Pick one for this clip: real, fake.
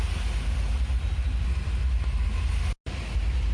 real